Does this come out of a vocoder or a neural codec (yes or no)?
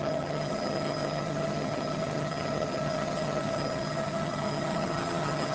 yes